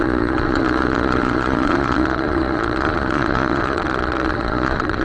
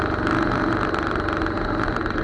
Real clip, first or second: second